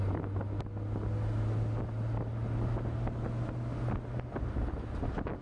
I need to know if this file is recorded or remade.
recorded